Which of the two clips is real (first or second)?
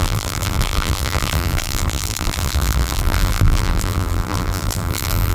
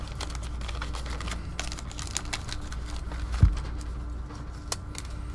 second